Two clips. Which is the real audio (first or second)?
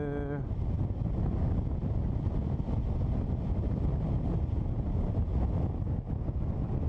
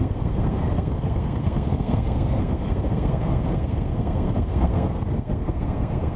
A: first